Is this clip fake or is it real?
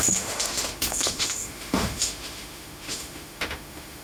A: fake